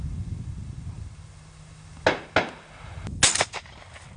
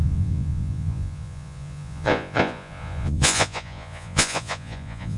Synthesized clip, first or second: second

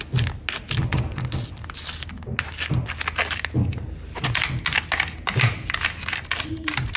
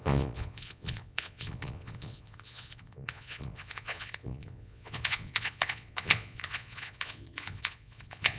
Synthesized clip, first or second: second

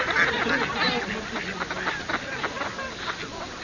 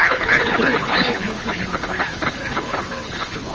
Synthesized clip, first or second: second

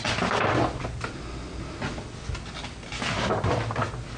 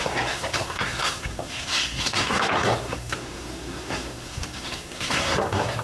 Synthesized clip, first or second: second